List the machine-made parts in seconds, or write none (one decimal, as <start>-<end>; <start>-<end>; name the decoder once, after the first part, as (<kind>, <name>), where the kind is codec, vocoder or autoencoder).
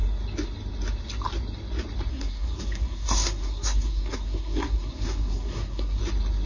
2.1-6.0 (codec, SNAC)